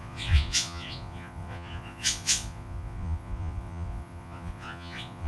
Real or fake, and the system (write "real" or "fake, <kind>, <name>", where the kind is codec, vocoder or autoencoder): fake, vocoder, Vocos